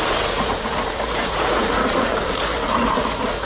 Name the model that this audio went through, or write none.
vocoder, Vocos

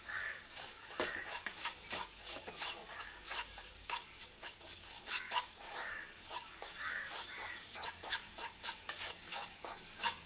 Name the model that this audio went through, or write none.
codec, DAC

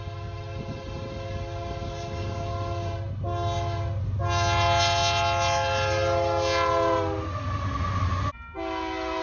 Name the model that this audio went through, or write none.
none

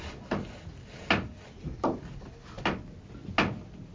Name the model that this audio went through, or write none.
none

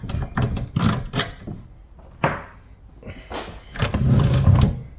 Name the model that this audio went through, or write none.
none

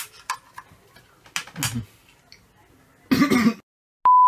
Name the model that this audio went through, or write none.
none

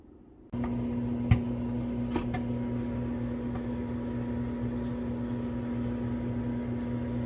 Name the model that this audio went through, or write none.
none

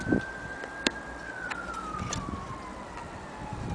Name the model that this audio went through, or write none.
none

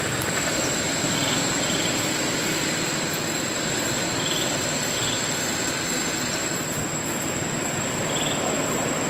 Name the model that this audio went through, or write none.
none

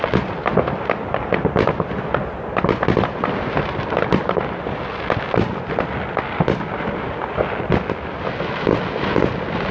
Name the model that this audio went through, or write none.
none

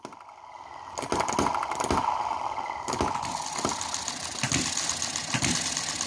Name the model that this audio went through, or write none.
none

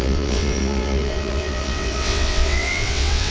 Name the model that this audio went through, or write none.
vocoder, WaveNeXt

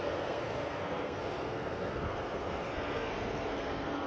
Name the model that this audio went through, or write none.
codec, SNAC